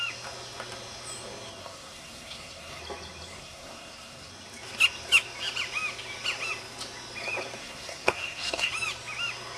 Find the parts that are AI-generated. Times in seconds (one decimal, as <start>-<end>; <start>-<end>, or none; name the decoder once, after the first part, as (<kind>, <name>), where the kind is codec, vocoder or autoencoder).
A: 1.6-2.8 (codec, SNAC); 3.3-4.3; 7.6-8.7